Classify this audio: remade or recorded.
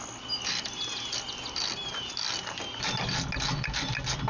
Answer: recorded